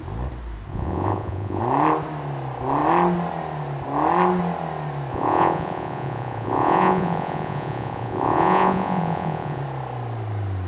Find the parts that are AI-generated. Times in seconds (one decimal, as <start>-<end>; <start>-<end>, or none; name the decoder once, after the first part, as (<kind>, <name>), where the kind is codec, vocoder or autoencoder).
0.7-1.6 (vocoder, Vocos); 5.1-9.6